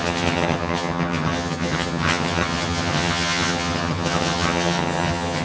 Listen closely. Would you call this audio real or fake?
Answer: fake